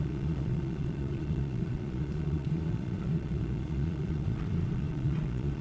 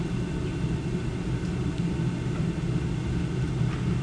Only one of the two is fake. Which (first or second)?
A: first